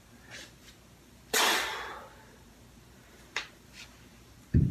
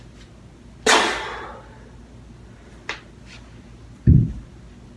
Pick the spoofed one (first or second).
first